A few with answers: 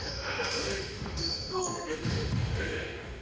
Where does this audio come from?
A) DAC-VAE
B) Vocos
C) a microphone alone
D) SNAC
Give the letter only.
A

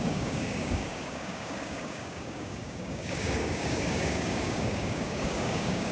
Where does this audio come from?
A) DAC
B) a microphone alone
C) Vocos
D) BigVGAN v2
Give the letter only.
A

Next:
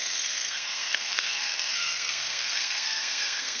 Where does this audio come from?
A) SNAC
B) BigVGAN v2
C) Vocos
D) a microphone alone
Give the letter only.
A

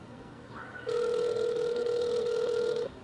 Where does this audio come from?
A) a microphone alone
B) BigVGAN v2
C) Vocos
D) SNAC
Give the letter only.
D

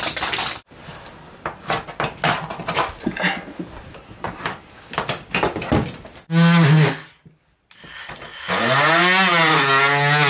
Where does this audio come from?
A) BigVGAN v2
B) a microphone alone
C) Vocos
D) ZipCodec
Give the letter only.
B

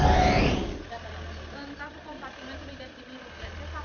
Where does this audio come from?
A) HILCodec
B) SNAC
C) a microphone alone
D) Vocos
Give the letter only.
C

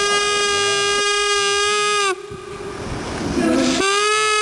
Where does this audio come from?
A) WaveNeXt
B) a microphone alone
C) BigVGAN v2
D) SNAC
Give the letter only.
B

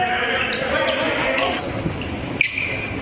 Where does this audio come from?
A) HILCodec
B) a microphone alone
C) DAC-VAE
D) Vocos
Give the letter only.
B